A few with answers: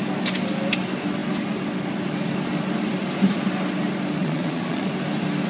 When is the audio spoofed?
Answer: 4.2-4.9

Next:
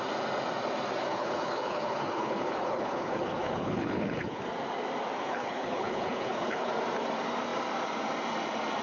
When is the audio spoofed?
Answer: 1.1-4.4; 5.2-6.7